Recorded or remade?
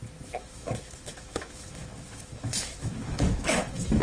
remade